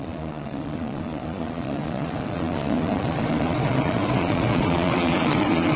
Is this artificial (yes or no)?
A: yes